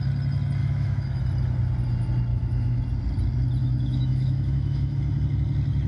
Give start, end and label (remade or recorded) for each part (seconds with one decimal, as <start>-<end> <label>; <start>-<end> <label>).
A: 0.0-0.6 recorded; 0.6-1.2 remade; 1.2-2.3 recorded; 2.3-2.8 remade; 2.8-3.6 recorded; 3.6-5.0 remade; 5.0-5.9 recorded